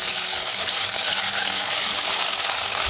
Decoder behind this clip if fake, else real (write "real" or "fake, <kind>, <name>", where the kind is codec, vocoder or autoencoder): fake, codec, DAC